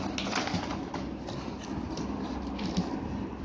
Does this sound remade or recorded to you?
recorded